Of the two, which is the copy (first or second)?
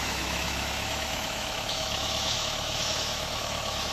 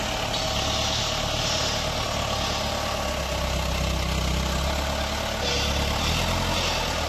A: first